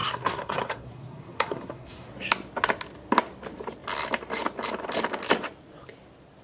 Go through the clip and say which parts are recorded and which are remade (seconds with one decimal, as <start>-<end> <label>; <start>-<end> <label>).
0.0-2.1 remade; 2.1-6.4 recorded